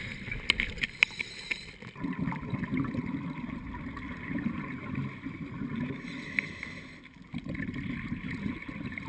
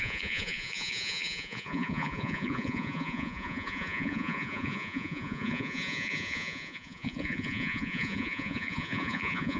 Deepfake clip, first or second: second